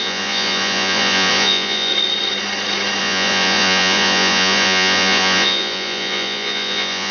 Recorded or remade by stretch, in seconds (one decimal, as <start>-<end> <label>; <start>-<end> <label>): 0.0-1.9 remade; 1.9-3.0 recorded; 3.0-7.1 remade